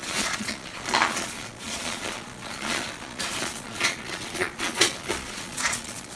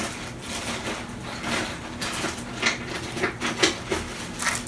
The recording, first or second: second